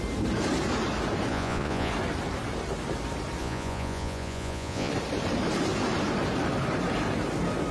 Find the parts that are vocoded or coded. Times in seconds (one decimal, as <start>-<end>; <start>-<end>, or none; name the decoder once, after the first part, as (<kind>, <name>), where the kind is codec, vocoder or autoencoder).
1.3-1.9 (vocoder, Vocos); 3.4-4.9